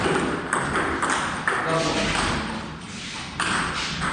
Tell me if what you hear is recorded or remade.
recorded